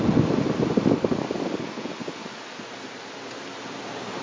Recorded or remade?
recorded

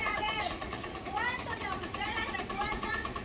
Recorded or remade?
remade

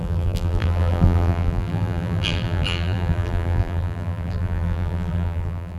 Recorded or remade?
remade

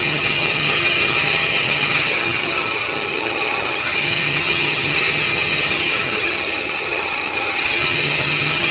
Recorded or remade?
remade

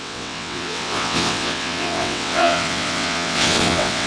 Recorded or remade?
remade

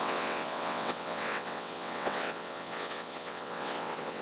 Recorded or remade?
remade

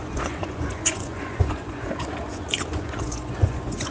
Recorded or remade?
remade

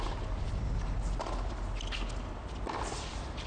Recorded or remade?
recorded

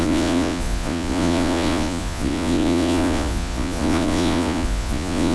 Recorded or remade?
remade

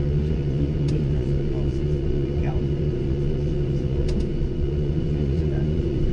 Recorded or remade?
remade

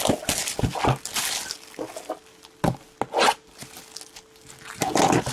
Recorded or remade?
recorded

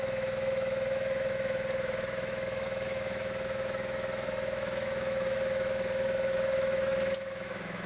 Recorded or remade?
remade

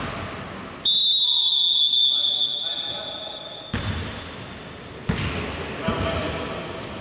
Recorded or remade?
recorded